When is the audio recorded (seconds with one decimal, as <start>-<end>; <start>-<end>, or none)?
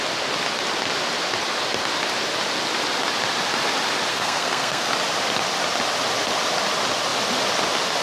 0.0-4.1; 4.9-8.0